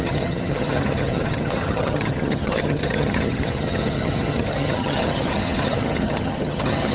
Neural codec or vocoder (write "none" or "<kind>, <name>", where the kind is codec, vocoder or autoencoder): vocoder, HiFi-GAN